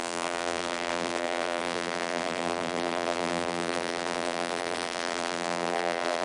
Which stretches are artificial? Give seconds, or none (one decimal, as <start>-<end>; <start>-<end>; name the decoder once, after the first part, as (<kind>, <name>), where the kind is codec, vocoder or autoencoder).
0.0-6.2 (vocoder, BigVGAN v2)